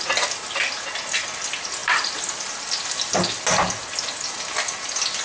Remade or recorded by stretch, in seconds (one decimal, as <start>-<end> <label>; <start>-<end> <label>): 0.0-5.2 recorded